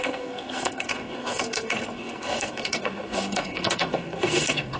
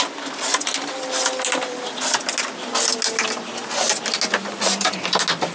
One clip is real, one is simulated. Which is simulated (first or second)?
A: first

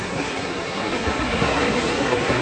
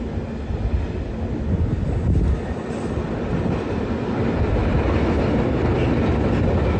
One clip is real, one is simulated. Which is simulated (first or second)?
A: first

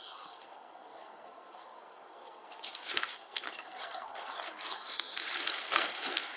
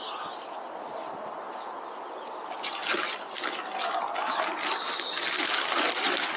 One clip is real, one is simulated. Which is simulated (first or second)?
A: first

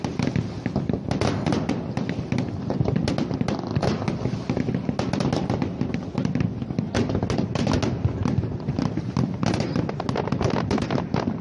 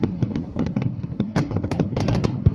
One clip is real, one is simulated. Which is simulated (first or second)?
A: second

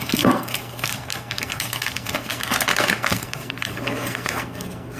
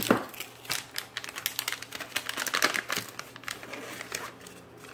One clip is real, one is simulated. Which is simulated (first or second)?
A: first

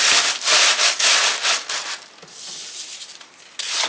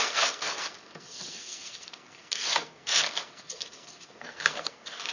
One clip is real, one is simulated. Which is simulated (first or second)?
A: second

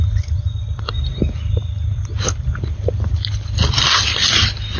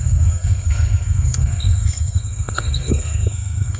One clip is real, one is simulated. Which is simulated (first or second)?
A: second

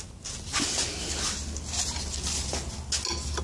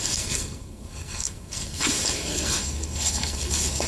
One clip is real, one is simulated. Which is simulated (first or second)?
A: second